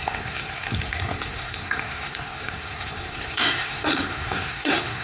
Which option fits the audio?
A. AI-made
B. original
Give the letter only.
A